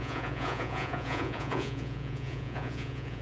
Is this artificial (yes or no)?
yes